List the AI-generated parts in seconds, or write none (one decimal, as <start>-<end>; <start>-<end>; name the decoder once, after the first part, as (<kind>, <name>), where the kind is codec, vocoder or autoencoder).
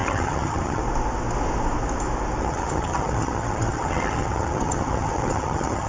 0.0-0.8 (vocoder, HiFi-GAN); 2.4-5.9